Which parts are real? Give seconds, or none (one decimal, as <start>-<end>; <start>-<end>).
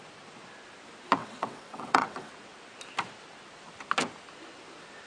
0.0-1.2; 2.3-5.1